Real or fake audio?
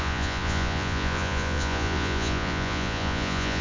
fake